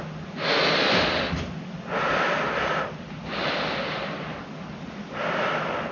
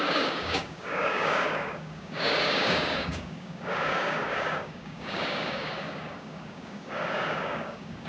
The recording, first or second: first